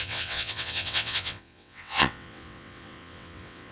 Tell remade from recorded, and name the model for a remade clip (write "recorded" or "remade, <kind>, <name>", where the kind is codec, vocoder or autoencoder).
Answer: remade, vocoder, WaveNeXt